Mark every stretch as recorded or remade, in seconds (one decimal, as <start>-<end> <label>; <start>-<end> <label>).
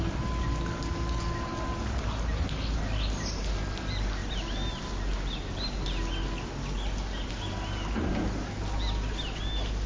0.0-9.9 recorded